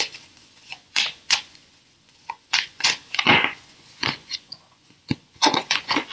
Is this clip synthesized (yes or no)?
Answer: yes